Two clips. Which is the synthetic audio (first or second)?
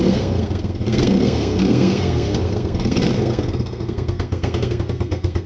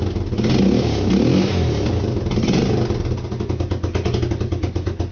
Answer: first